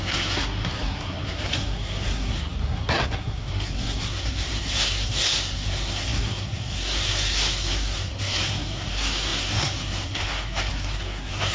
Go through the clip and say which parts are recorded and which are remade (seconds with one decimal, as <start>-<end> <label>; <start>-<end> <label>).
0.0-11.5 remade